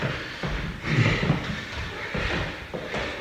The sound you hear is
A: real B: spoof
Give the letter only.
A